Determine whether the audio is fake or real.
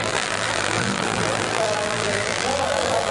fake